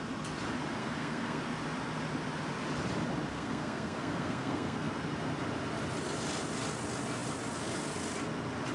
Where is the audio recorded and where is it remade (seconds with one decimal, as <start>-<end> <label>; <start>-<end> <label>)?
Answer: 0.0-0.8 recorded; 0.8-1.4 remade; 1.4-3.3 recorded; 3.3-4.9 remade; 4.9-8.7 recorded

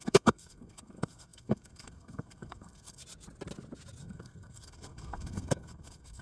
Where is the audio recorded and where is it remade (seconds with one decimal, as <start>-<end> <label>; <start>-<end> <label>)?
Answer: 0.0-3.0 remade; 3.0-4.0 recorded; 4.0-6.2 remade

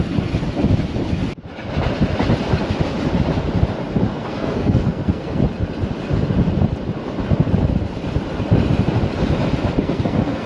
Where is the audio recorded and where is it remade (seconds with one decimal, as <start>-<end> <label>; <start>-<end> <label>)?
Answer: 0.0-4.1 recorded; 4.1-5.4 remade; 5.4-9.8 recorded; 9.8-10.5 remade

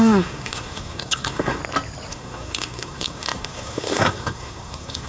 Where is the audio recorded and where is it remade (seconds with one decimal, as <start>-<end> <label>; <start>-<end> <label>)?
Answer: 0.0-1.6 remade; 1.6-2.1 recorded; 2.1-5.1 remade

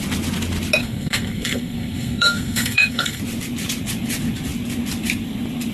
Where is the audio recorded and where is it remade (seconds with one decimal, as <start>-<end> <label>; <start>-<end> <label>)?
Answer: 0.0-0.8 recorded; 0.8-3.2 remade; 3.2-5.7 recorded